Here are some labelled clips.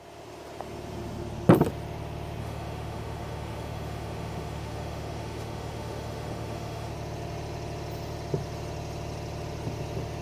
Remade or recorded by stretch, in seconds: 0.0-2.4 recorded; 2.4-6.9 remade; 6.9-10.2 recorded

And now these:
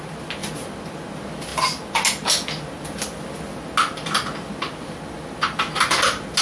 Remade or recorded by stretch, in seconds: 0.0-6.4 recorded